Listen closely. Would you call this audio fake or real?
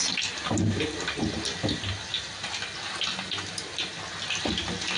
real